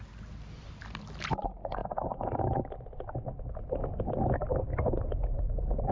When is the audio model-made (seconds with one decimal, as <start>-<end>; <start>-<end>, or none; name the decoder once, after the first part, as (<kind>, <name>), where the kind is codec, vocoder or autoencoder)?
none